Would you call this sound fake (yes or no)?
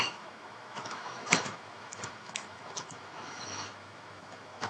yes